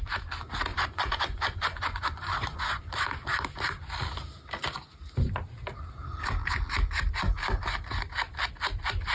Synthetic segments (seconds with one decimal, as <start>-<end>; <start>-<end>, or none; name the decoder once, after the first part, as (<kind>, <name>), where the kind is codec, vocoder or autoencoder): 0.7-2.8 (vocoder, Vocos)